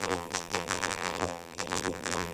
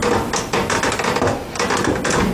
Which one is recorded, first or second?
second